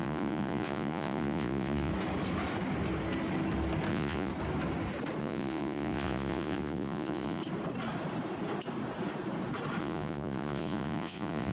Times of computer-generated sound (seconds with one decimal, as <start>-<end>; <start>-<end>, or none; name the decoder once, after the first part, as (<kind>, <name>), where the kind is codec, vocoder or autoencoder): 0.0-1.9 (vocoder, Vocos); 3.9-4.3; 5.2-7.4; 9.8-11.5